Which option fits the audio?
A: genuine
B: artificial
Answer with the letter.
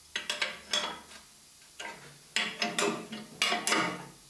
A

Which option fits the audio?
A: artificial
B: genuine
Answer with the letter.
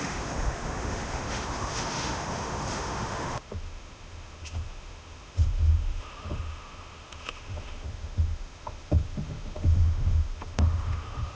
A